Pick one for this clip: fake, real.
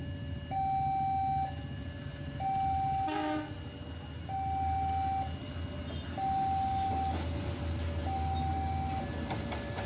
real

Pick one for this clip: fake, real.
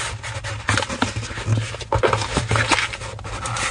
real